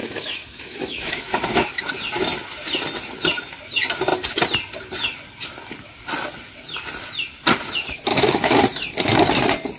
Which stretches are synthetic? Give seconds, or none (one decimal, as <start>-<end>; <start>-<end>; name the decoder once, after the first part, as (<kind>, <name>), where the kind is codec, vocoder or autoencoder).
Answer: 0.0-1.8 (autoencoder, DAC-VAE); 8.1-8.6